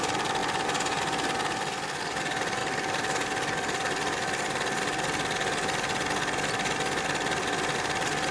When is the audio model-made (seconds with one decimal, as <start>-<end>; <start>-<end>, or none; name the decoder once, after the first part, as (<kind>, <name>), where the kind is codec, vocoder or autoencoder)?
none